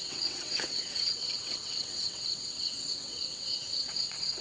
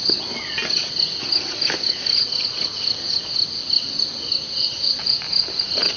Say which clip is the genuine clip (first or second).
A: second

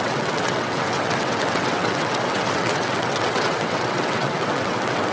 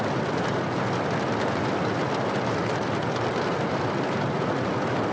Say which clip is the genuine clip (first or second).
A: second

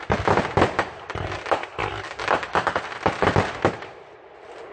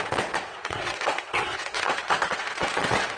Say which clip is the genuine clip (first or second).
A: first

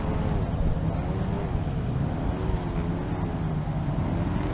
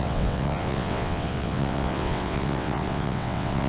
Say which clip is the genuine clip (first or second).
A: first